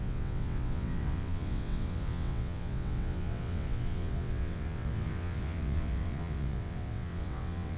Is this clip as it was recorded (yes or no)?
no